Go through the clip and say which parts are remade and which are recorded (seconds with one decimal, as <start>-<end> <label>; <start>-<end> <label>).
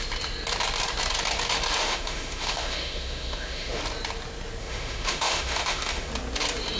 0.0-1.8 recorded; 1.8-3.8 remade; 3.8-4.6 recorded; 4.6-6.1 remade; 6.1-6.8 recorded